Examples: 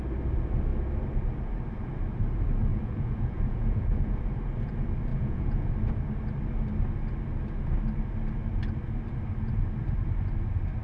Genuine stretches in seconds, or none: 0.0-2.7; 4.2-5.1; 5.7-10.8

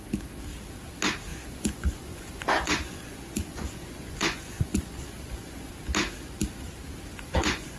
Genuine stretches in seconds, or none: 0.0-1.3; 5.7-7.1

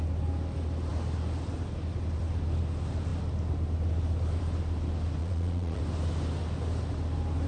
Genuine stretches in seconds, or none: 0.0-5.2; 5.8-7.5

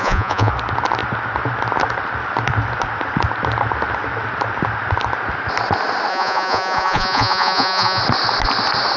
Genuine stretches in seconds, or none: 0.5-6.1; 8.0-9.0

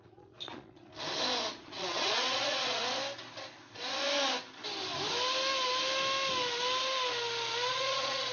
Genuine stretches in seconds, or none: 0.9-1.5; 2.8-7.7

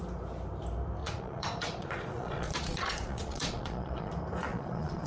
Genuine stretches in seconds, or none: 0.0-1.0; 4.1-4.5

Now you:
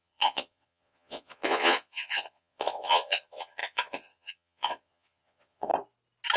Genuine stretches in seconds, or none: 5.7-6.4

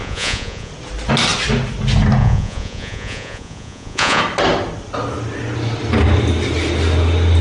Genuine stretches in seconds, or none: 0.7-2.2; 4.2-7.4